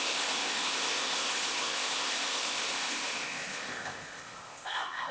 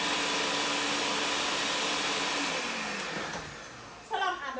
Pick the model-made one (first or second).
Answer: first